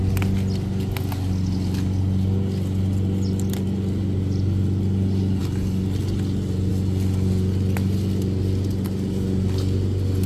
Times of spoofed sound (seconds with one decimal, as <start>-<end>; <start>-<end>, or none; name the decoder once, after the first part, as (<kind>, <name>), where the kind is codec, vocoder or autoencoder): none